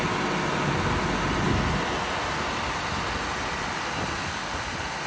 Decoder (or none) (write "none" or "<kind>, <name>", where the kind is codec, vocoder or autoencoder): none